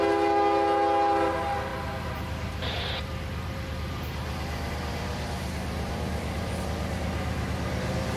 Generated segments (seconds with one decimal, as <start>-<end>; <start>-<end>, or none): 1.7-6.6